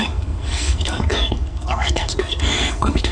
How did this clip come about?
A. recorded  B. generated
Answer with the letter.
B